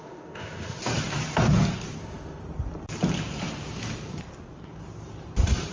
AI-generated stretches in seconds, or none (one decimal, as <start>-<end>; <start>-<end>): 0.0-0.8; 2.0-2.4